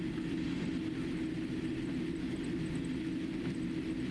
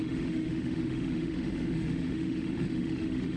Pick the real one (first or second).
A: first